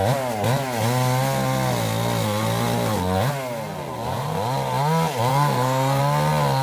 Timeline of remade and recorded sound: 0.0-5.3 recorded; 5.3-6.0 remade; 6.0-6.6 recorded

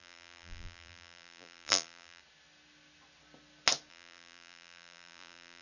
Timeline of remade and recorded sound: 0.0-2.2 remade; 2.2-3.9 recorded; 3.9-5.6 remade

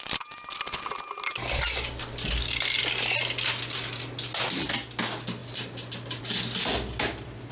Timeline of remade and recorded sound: 0.0-7.5 recorded

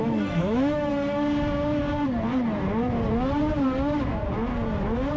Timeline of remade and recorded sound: 0.0-0.9 remade; 0.9-5.2 recorded

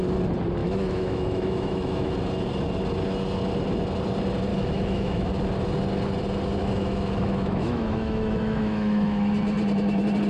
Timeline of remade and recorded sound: 0.0-0.6 recorded; 0.6-2.1 remade; 2.1-4.5 recorded; 4.5-5.3 remade; 5.3-6.6 recorded; 6.6-9.3 remade; 9.3-10.3 recorded

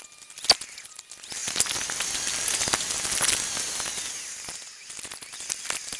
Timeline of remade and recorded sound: 0.0-6.0 recorded

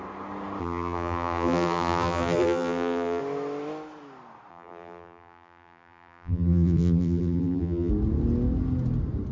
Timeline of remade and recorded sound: 0.0-0.6 recorded; 0.6-3.2 remade; 3.2-4.5 recorded; 4.5-7.9 remade; 7.9-9.3 recorded